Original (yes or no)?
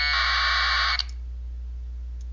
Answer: yes